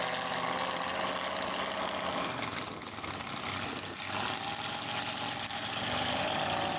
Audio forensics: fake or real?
real